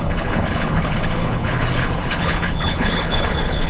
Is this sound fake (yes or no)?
yes